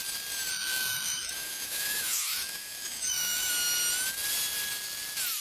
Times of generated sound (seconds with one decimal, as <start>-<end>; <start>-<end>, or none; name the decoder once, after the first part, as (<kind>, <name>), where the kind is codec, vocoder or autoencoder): 0.5-3.5 (autoencoder, DAC-VAE)